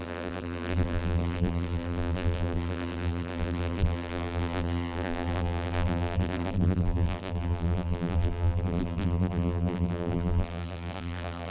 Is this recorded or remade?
remade